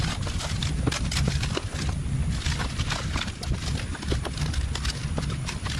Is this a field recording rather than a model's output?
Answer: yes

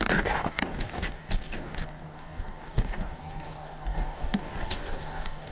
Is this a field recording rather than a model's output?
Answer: no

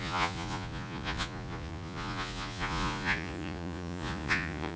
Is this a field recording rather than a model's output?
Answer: no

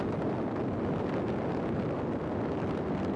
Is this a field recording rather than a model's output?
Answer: yes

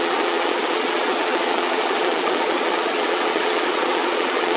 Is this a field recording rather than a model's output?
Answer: no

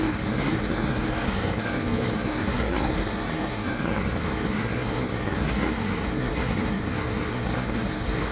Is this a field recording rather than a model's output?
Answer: no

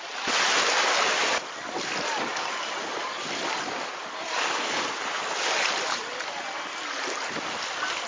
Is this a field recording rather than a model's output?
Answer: yes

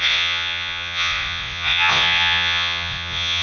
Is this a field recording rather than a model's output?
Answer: no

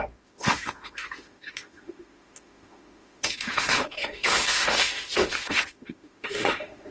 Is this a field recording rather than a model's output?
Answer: no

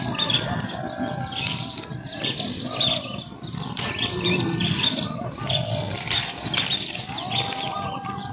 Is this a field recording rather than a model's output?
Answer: no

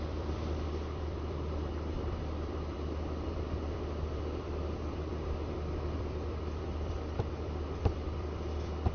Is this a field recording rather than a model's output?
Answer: no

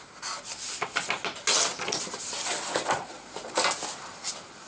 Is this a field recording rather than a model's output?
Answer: yes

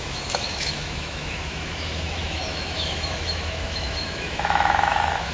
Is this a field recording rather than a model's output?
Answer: no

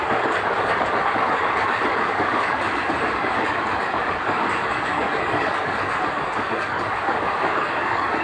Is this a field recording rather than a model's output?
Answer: no